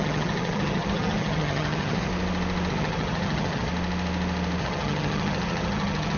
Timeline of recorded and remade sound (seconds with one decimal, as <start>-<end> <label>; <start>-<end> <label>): 0.0-2.1 remade; 2.1-2.7 recorded; 2.7-3.7 remade; 3.7-4.6 recorded; 4.6-6.2 remade